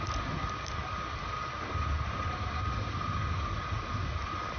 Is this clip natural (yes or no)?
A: yes